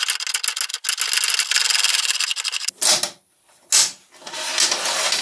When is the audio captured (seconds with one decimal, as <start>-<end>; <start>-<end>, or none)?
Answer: 0.0-5.2